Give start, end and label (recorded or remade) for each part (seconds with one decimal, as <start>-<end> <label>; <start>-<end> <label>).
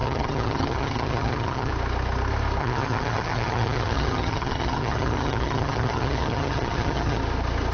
0.0-1.7 remade; 1.7-2.6 recorded; 2.6-7.2 remade; 7.2-7.7 recorded